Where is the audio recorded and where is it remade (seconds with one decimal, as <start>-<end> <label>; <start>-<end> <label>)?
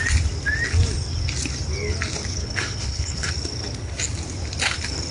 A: 0.0-2.4 recorded; 2.4-3.3 remade; 3.3-5.1 recorded